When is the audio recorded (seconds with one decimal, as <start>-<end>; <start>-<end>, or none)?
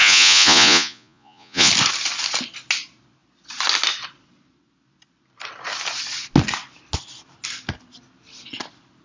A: 1.7-9.0